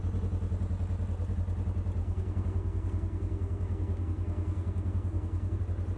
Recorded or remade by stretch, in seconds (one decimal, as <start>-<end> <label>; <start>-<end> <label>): 0.0-2.0 recorded; 2.0-5.6 remade; 5.6-6.0 recorded